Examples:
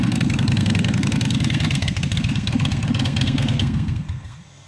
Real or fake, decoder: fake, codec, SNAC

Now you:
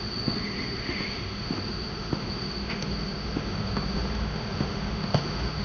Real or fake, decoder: fake, autoencoder, DAC-VAE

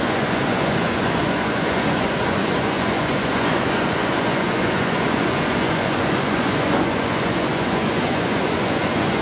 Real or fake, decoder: fake, vocoder, Vocos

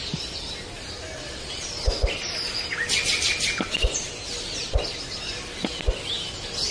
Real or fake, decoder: real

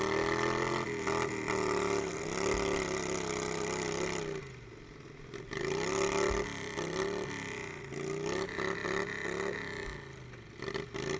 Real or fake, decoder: real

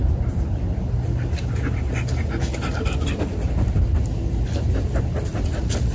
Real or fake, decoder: real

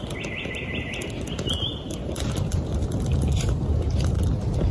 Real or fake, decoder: real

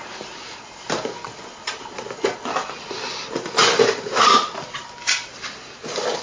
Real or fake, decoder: real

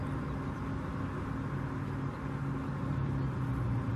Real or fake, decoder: real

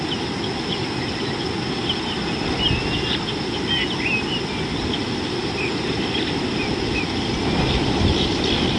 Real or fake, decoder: real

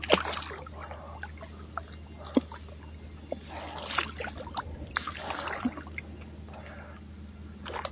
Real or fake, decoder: real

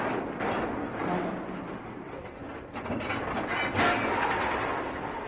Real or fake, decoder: real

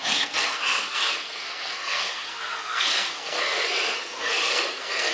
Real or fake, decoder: fake, codec, SNAC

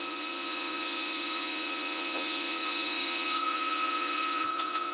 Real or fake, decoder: fake, vocoder, Vocos